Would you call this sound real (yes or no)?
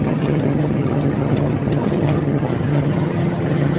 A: no